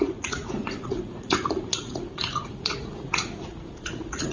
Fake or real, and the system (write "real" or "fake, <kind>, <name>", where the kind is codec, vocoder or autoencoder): fake, vocoder, Vocos